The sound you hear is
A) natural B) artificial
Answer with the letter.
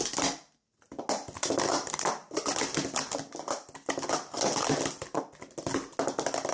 A